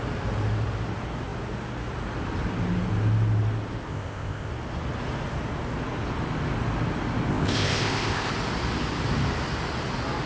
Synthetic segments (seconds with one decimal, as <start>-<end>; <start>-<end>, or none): 3.9-4.5; 7.3-8.3